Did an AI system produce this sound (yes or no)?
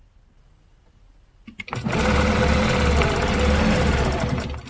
no